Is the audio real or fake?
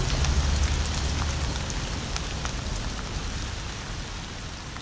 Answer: real